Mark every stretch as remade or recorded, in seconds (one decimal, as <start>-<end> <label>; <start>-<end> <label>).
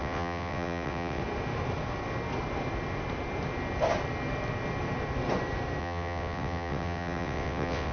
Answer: 0.0-1.2 remade; 1.2-5.8 recorded; 5.8-7.9 remade